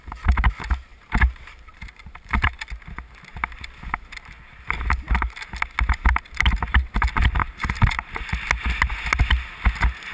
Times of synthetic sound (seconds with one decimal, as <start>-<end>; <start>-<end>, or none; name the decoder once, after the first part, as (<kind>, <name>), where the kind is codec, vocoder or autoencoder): 0.9-2.5 (vocoder, BigVGAN v2); 7.4-8.1